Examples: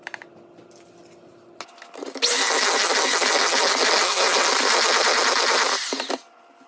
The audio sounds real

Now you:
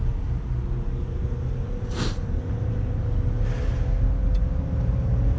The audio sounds real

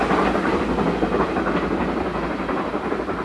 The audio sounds real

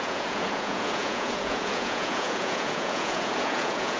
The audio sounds fake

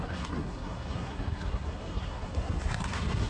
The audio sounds fake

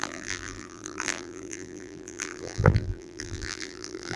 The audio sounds fake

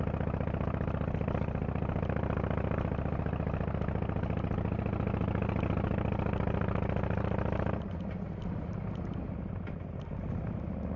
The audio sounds real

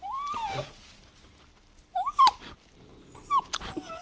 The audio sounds real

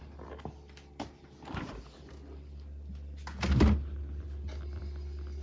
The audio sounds real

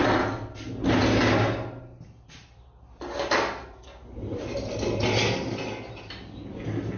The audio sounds real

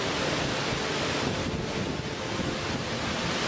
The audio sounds real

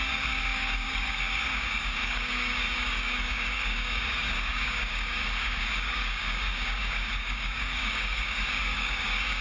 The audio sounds fake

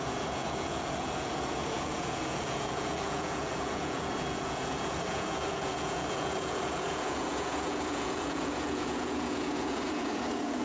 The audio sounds fake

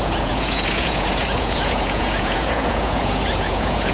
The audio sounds fake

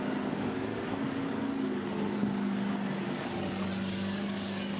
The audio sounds fake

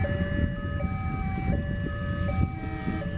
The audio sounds real